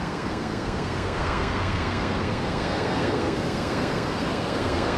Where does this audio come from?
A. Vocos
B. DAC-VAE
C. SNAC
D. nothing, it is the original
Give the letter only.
C